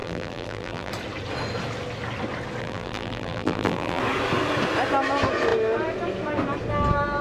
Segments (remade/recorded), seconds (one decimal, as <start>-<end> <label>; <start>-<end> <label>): 0.0-0.9 remade; 0.9-2.6 recorded; 2.6-4.0 remade; 4.0-7.2 recorded